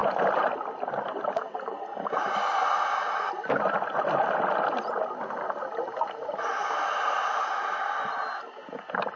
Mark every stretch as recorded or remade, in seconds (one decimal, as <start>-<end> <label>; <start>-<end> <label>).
0.0-9.2 recorded